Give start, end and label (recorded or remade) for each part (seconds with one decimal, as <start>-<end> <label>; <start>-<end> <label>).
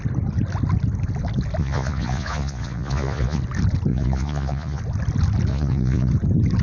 0.0-1.6 recorded; 1.6-3.4 remade; 3.4-3.9 recorded; 3.9-4.8 remade; 4.8-5.5 recorded; 5.5-6.1 remade; 6.1-6.6 recorded